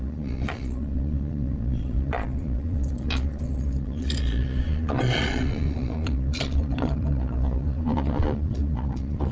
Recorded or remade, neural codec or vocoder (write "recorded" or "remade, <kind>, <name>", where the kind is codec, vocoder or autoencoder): remade, vocoder, Vocos